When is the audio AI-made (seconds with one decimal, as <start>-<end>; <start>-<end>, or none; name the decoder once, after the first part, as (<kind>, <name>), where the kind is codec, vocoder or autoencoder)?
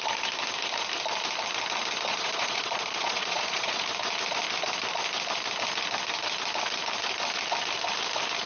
2.1-3.8 (vocoder, Vocos)